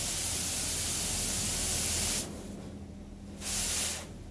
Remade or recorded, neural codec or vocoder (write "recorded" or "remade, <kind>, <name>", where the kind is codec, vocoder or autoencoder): recorded